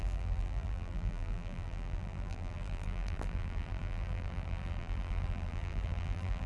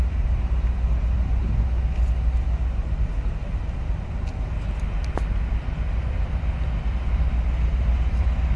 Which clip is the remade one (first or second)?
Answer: first